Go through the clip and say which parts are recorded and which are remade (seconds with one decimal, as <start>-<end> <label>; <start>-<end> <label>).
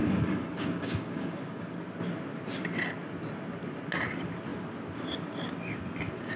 0.0-1.7 remade; 1.7-6.4 recorded